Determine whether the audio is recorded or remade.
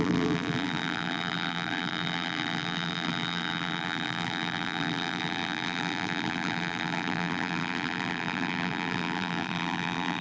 remade